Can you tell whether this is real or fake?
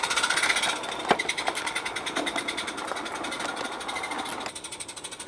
real